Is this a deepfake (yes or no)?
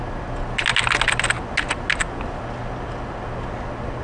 no